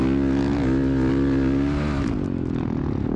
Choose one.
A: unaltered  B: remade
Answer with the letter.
A